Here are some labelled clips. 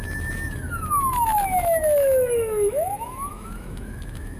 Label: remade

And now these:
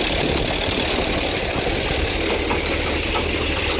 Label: recorded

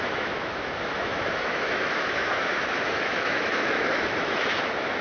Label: remade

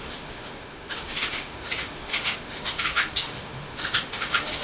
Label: remade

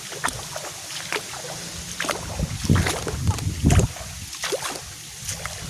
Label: recorded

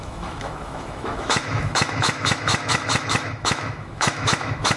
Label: remade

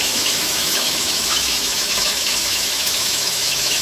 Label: remade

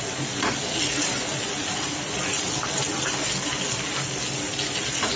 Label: recorded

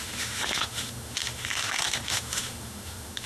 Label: remade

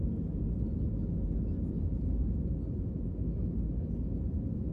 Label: recorded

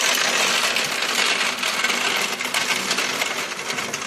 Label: recorded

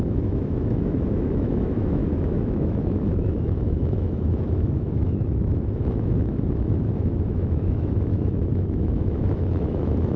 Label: remade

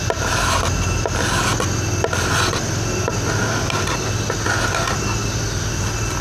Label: recorded